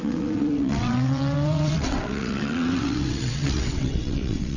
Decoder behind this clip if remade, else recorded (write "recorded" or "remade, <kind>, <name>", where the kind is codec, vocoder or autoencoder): remade, vocoder, WaveNeXt